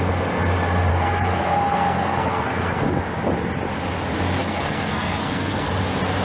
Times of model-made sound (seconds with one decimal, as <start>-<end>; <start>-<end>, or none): 0.9-2.8; 4.4-5.7

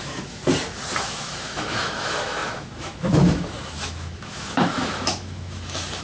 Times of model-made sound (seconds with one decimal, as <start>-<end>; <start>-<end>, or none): 0.0-0.4; 1.0-6.0

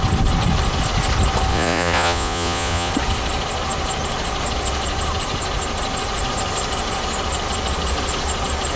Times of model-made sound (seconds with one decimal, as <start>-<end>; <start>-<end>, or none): 1.5-2.9

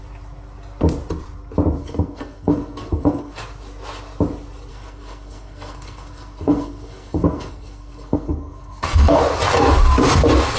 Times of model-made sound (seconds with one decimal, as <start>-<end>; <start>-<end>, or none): 1.8-3.4; 4.7-9.2

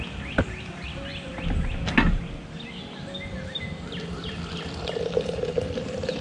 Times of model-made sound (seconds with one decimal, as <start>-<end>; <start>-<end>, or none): 0.0-1.1; 4.8-6.2

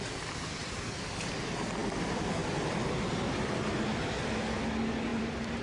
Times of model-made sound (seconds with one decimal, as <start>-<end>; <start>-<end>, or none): 0.6-1.3; 5.1-5.6